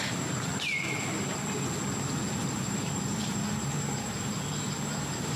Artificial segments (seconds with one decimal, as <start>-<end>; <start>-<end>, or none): 0.0-0.5; 2.4-5.4

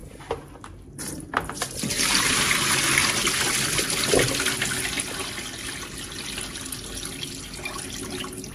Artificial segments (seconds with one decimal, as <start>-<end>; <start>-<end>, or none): 0.0-2.5

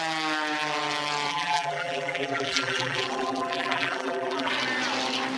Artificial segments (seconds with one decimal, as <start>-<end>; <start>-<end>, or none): 1.3-4.5

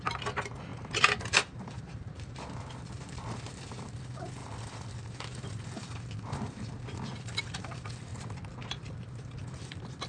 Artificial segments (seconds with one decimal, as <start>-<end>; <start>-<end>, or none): 0.0-10.1